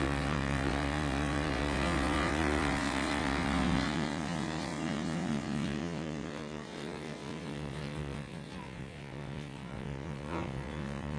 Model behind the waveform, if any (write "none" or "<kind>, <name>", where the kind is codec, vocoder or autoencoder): vocoder, WaveNeXt